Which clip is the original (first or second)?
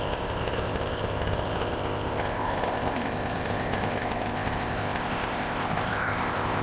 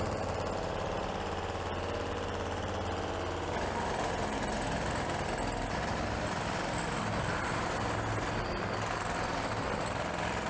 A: second